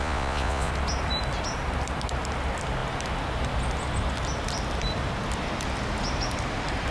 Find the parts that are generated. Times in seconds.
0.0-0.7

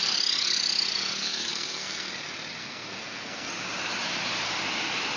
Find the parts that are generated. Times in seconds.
1.2-2.1; 2.6-3.5

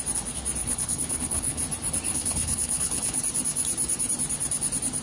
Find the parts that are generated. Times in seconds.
0.6-1.6; 2.1-3.2